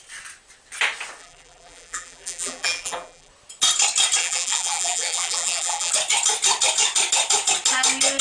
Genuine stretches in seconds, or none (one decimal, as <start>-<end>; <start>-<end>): 0.0-1.2; 3.3-4.2; 5.9-8.2